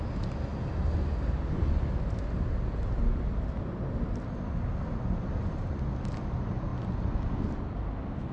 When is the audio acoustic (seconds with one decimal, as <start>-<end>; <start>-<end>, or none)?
0.0-8.3